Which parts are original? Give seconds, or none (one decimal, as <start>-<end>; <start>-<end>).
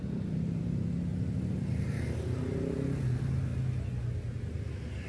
0.0-5.1